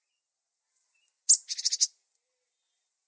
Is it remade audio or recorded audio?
recorded